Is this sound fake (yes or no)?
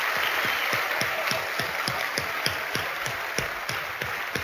no